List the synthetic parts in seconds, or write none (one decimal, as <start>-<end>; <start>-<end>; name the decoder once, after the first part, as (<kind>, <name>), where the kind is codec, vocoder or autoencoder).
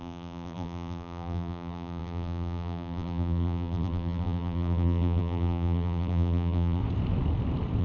0.0-6.8 (vocoder, BigVGAN v2)